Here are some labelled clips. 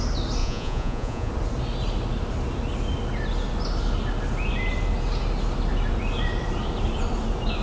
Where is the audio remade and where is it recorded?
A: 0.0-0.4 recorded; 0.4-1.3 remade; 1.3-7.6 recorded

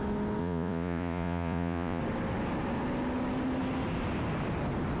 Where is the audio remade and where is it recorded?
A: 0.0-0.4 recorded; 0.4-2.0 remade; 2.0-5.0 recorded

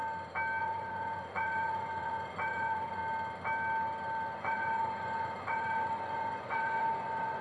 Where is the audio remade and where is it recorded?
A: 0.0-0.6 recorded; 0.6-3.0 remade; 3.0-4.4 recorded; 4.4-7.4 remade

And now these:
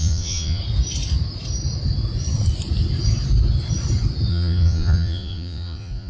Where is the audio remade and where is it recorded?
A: 0.0-0.6 remade; 0.6-4.3 recorded; 4.3-6.1 remade

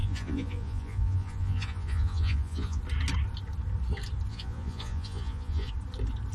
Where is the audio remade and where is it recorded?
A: 0.0-2.8 remade; 2.8-4.3 recorded; 4.3-5.7 remade; 5.7-6.3 recorded

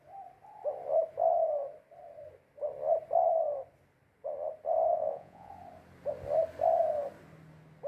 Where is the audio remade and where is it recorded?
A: 0.0-4.9 recorded; 4.9-5.5 remade; 5.5-7.9 recorded

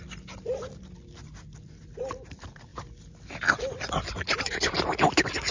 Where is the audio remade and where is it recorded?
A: 0.0-5.5 recorded